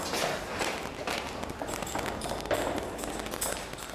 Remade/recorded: recorded